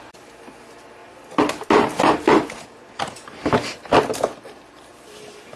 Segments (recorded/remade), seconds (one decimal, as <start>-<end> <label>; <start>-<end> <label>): 0.0-5.6 recorded